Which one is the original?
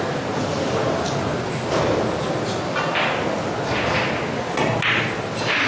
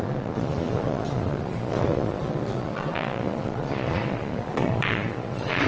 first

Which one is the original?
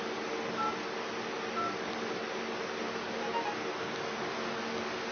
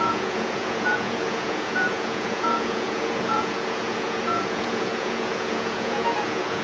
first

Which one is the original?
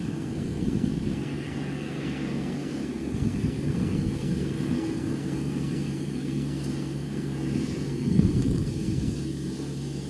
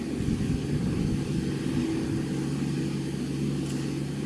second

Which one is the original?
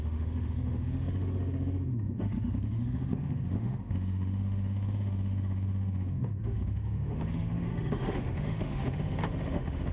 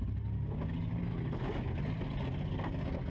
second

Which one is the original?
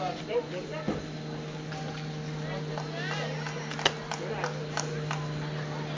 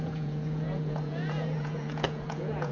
first